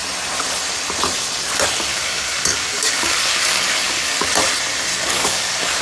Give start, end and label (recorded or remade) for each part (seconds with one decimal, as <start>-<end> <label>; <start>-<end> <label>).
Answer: 0.0-1.9 recorded; 1.9-4.3 remade; 4.3-4.9 recorded; 4.9-5.8 remade